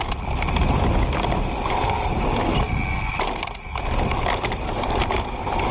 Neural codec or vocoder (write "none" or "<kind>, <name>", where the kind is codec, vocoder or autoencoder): none